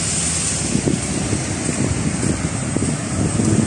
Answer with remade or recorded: recorded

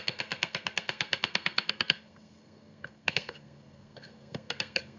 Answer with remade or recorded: remade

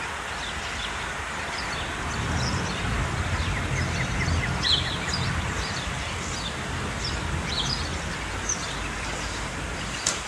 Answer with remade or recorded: recorded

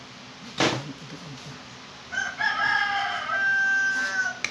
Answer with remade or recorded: recorded